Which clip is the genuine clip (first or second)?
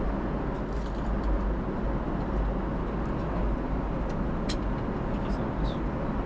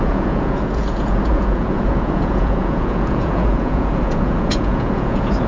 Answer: first